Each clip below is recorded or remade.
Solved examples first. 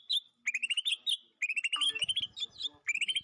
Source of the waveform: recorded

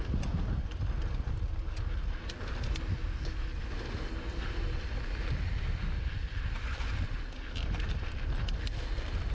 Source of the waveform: recorded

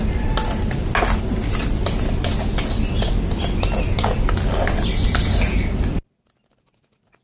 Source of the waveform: recorded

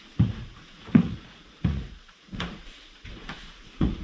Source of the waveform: remade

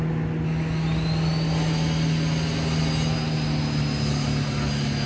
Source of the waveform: recorded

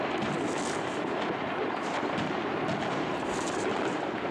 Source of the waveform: recorded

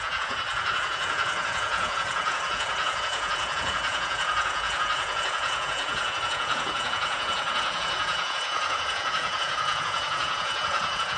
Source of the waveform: remade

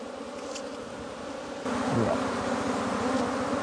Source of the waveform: recorded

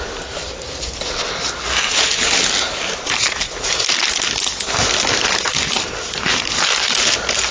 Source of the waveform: recorded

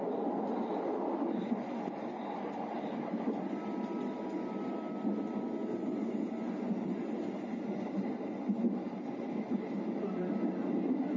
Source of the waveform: recorded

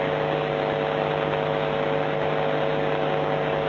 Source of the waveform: recorded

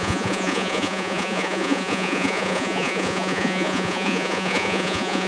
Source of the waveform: remade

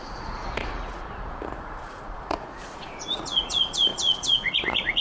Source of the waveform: remade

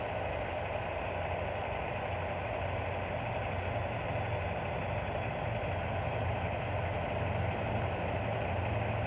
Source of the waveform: recorded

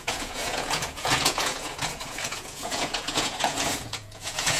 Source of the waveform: remade